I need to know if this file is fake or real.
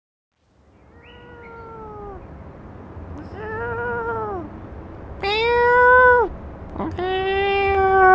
real